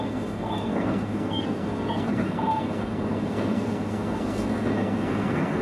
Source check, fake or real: fake